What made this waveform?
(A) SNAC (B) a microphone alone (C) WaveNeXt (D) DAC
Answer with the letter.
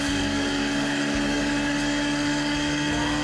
D